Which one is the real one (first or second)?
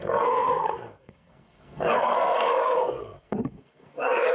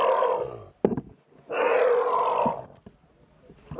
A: second